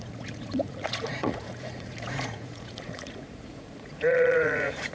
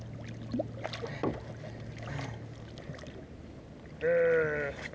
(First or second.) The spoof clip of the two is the first